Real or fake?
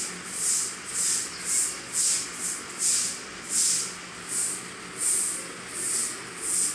real